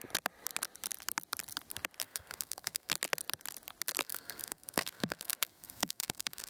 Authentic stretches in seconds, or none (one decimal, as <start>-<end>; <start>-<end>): 0.0-2.0; 2.9-4.0